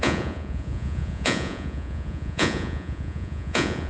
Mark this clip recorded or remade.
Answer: remade